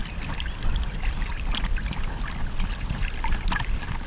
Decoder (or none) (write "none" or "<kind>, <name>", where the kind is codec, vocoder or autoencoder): none